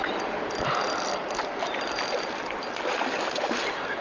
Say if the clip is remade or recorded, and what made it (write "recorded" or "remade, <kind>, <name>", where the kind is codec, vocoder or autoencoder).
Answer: recorded